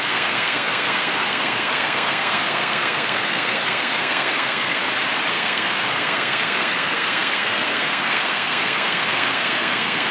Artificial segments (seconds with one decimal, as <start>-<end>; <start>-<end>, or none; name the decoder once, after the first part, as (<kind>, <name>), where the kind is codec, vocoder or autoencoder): 0.0-4.8 (codec, SNAC); 5.3-10.1